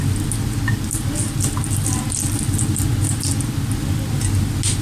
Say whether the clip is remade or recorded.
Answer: recorded